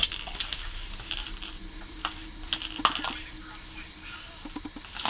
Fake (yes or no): no